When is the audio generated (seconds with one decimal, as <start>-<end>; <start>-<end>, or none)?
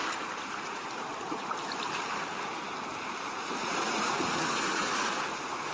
3.4-5.7